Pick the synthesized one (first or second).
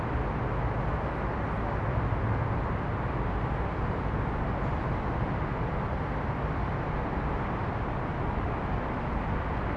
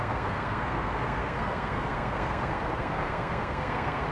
second